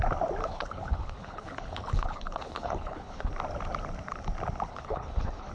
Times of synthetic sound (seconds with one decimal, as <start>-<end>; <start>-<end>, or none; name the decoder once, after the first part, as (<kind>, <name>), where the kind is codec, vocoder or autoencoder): 0.4-3.3 (codec, HILCodec); 4.7-5.5